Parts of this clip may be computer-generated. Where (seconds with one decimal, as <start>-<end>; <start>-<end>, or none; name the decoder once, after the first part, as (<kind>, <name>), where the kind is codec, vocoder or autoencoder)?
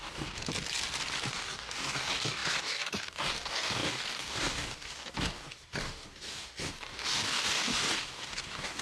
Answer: 0.0-0.5 (codec, DAC); 1.3-8.8